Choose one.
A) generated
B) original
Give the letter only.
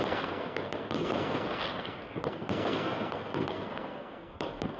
A